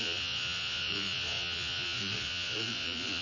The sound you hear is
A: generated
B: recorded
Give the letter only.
A